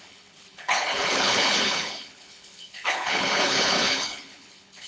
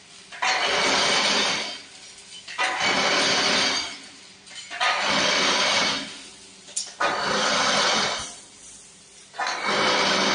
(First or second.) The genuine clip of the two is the second